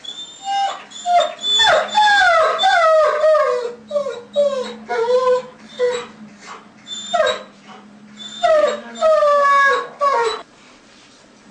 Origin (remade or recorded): recorded